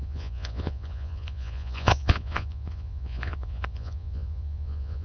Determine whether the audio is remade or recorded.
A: remade